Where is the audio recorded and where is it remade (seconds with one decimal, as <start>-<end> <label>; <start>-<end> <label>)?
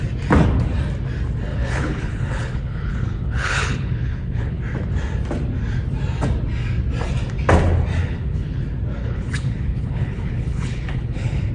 0.0-1.5 recorded; 1.5-4.6 remade; 4.6-8.0 recorded; 8.0-8.6 remade; 8.6-9.0 recorded; 9.0-11.5 remade